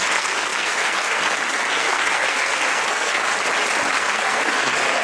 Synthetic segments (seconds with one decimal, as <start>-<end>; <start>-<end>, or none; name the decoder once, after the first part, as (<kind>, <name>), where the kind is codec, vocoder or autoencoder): 0.0-3.3 (codec, SNAC); 3.9-5.0